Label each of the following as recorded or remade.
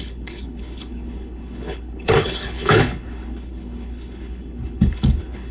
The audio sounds remade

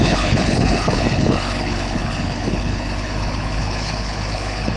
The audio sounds remade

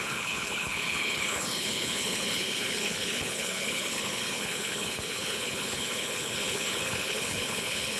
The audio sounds remade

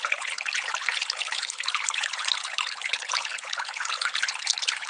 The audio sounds remade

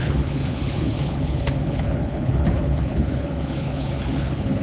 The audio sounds remade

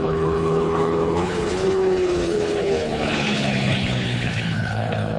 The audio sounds remade